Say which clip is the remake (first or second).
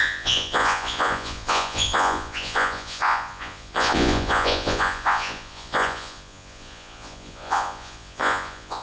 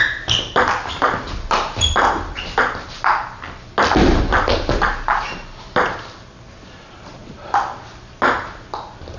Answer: first